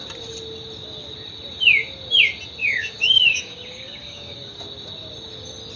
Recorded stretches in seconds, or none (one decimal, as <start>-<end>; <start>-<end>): 0.0-2.6; 4.6-5.8